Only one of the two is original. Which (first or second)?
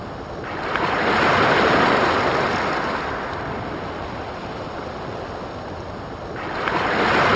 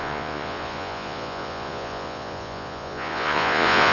first